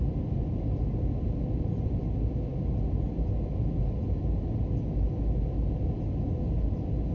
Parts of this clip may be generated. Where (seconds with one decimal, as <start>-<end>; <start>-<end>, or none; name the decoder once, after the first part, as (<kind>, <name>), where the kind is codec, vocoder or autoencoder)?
none